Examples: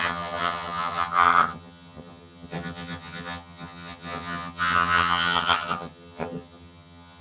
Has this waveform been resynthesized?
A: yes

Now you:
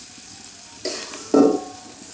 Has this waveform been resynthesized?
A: no